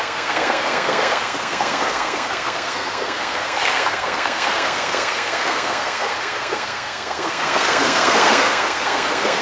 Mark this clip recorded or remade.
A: remade